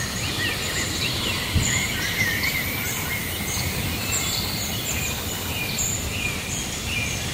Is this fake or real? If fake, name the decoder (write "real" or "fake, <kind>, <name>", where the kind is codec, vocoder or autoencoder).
fake, vocoder, BigVGAN v2